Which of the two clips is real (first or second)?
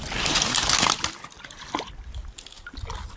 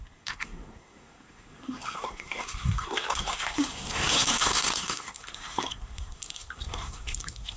first